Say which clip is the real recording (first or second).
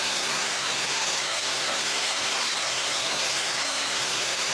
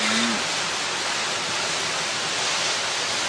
second